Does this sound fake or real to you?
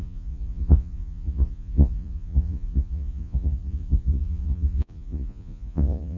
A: fake